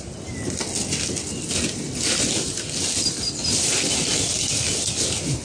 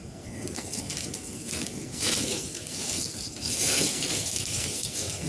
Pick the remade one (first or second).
second